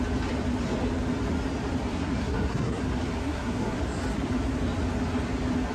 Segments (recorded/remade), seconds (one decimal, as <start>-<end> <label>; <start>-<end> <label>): 0.0-1.9 recorded; 1.9-2.8 remade; 2.8-3.2 recorded; 3.2-3.8 remade; 3.8-5.7 recorded